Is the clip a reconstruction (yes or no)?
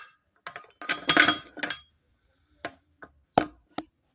no